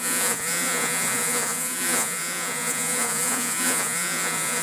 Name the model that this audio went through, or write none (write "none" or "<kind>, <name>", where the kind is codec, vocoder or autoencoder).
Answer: vocoder, Vocos